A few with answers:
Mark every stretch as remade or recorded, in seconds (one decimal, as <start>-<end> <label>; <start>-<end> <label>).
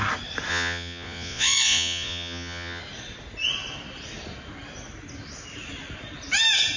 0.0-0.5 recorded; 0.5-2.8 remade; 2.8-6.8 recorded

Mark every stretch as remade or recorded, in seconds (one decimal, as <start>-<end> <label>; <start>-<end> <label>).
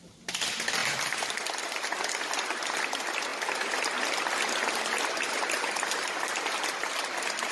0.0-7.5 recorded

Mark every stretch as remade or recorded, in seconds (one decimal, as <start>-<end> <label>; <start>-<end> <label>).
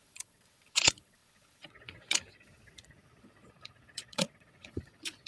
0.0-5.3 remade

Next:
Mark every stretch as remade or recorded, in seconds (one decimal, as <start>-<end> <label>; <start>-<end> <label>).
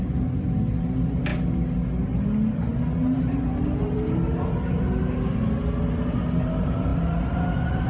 0.0-7.9 recorded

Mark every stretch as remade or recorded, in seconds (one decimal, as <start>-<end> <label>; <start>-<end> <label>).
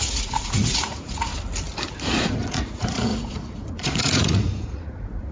0.0-1.3 remade; 1.3-2.0 recorded; 2.0-5.3 remade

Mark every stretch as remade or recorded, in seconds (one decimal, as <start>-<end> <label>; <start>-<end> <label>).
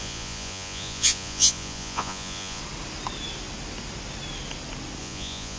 0.0-2.6 remade; 2.6-5.0 recorded; 5.0-5.6 remade